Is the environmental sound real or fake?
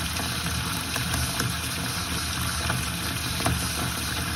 real